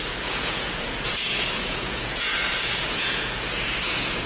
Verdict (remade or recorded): remade